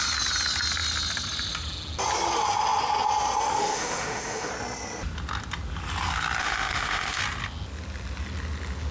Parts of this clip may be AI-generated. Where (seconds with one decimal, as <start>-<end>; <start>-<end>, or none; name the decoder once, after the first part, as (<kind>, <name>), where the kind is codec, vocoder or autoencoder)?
3.6-4.5 (autoencoder, DAC-VAE); 6.4-7.2